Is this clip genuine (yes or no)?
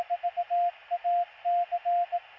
yes